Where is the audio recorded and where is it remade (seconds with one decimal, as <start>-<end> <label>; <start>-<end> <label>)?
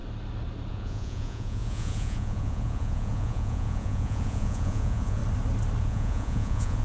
0.0-0.7 recorded; 0.7-5.2 remade; 5.2-5.8 recorded; 5.8-6.8 remade